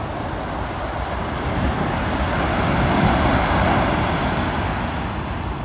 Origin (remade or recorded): recorded